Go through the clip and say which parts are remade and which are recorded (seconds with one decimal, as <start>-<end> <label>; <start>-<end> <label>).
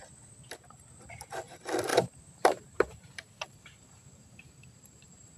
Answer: 0.0-1.9 recorded; 1.9-5.4 remade